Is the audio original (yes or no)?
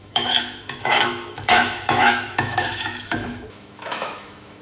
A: no